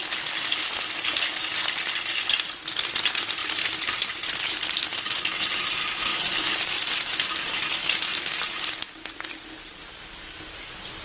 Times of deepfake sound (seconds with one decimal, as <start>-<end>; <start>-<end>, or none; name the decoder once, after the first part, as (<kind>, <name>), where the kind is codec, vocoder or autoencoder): 3.4-4.5 (vocoder, BigVGAN v2); 6.1-7.3; 9.8-10.4